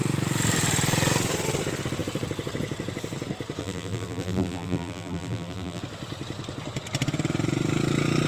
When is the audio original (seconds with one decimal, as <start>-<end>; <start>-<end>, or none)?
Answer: 0.0-3.6; 5.8-8.3